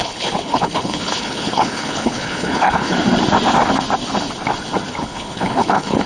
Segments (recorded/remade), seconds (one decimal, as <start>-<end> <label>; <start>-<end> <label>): 0.0-2.9 remade; 2.9-4.9 recorded; 4.9-6.1 remade